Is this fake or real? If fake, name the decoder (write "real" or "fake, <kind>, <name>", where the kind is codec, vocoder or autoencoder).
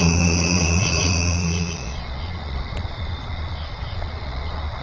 fake, vocoder, Vocos